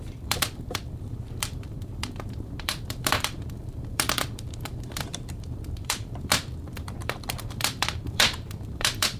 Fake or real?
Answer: fake